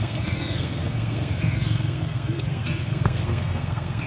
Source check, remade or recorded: remade